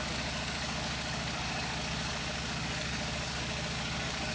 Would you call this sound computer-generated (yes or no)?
yes